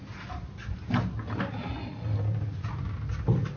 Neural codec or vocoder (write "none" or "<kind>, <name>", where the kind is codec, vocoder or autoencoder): none